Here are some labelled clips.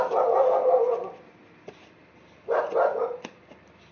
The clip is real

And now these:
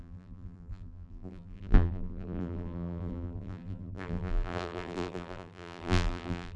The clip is fake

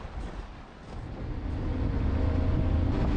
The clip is real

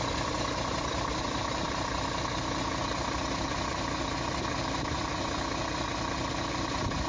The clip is real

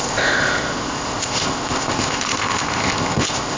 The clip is fake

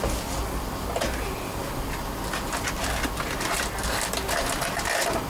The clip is real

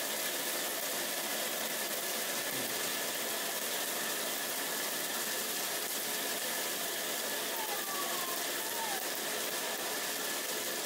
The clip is real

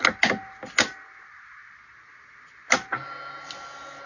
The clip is real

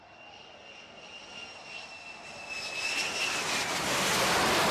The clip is real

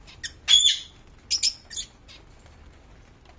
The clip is real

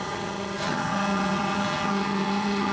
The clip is fake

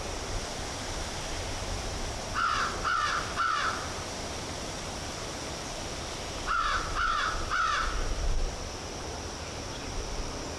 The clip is fake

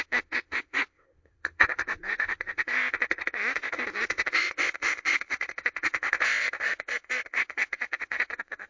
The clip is fake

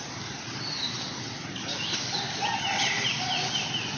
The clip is real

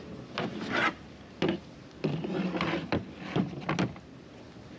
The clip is real